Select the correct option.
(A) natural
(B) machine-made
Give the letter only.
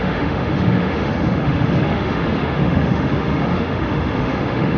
B